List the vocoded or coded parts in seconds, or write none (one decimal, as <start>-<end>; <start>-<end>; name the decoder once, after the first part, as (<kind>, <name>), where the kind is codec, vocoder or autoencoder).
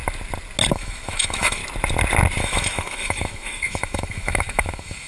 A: 0.7-1.6 (autoencoder, DAC-VAE); 2.4-5.1